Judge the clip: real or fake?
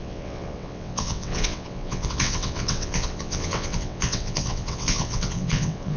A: fake